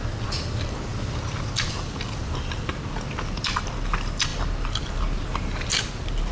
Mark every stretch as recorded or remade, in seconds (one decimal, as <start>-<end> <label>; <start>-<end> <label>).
0.0-6.3 recorded